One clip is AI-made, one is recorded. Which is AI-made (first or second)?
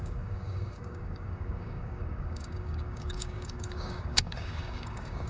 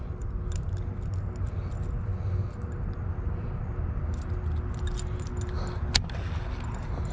first